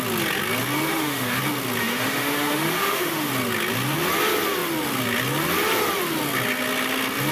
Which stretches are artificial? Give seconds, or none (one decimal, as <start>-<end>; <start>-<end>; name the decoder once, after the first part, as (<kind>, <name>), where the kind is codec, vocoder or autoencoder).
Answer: 0.9-1.4 (autoencoder, DAC-VAE); 1.8-3.3

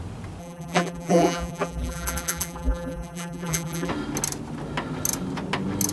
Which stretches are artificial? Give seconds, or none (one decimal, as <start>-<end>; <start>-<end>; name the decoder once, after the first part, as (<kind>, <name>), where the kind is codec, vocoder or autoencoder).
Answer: 0.4-3.9 (vocoder, BigVGAN v2)

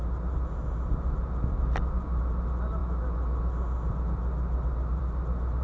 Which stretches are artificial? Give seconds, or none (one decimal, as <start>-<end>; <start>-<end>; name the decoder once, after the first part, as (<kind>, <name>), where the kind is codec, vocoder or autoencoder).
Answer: none

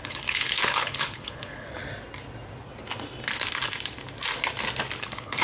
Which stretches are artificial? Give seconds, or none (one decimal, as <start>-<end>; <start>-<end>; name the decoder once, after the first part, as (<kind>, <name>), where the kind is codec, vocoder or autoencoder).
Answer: 0.0-1.8 (codec, HILCodec); 5.0-5.4